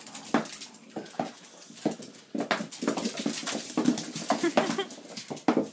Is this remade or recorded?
recorded